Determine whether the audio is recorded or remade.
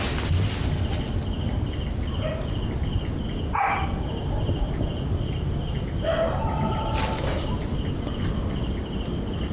recorded